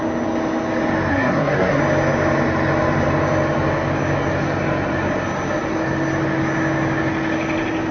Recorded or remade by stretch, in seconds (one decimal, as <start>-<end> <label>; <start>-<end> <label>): 0.0-1.1 recorded; 1.1-1.8 remade; 1.8-7.9 recorded